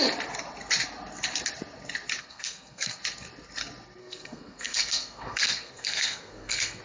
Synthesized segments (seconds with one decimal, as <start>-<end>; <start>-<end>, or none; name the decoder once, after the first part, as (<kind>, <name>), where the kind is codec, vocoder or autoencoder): 2.2-3.0 (codec, SNAC); 4.0-6.8